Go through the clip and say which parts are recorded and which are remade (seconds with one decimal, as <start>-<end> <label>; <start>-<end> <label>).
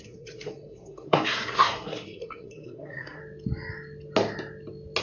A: 0.0-3.2 remade; 3.2-5.0 recorded